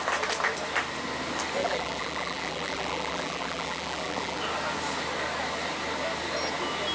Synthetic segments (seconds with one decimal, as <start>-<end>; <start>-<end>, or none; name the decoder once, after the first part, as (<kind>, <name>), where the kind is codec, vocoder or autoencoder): 1.6-4.4 (vocoder, BigVGAN v2)